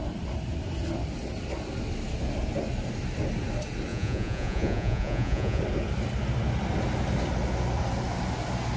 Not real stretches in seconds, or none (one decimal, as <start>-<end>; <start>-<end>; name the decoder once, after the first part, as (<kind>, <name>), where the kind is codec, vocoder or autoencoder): 3.9-5.6 (vocoder, Vocos)